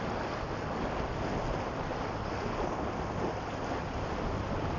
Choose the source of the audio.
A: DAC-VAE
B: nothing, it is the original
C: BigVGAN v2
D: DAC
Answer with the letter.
B